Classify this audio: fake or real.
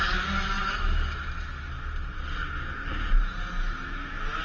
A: real